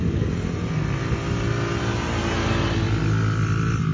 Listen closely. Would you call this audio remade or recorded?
recorded